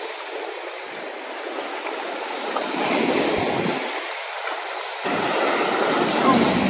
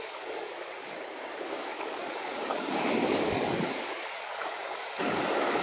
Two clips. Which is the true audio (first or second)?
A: first